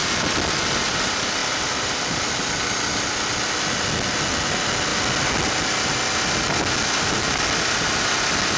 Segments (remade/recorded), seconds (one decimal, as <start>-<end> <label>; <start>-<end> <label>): 0.0-8.6 recorded